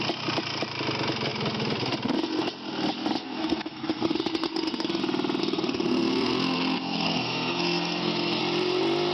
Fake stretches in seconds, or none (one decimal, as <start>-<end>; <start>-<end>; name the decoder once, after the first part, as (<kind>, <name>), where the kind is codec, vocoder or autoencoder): 3.2-5.0 (codec, SNAC); 5.4-8.4